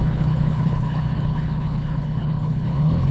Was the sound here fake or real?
fake